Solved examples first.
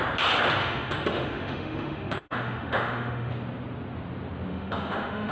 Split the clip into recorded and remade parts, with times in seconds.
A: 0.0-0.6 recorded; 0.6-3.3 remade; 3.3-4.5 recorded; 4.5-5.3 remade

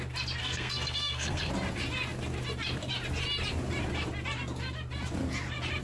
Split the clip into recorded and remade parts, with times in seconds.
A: 0.0-0.4 recorded; 0.4-1.5 remade; 1.5-5.8 recorded

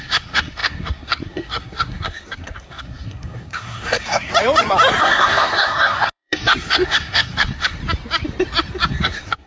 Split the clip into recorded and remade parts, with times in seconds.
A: 0.0-4.3 remade; 4.3-5.0 recorded; 5.0-7.8 remade; 7.8-8.9 recorded; 8.9-9.5 remade

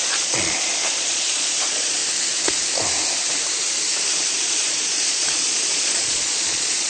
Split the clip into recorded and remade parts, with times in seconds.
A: 0.0-2.0 remade; 2.0-4.5 recorded; 4.5-6.9 remade

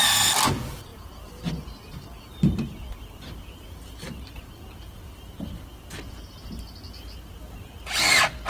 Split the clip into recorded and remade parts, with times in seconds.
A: 0.0-8.5 recorded

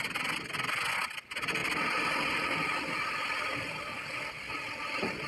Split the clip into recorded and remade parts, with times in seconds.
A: 0.0-5.3 recorded

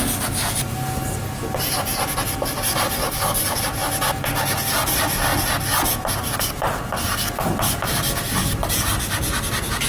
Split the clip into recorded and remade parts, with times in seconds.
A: 0.0-3.0 recorded; 3.0-3.6 remade; 3.6-9.9 recorded